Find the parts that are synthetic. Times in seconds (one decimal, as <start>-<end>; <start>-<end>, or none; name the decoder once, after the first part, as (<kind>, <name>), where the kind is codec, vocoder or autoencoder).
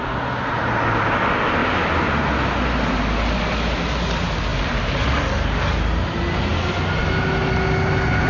none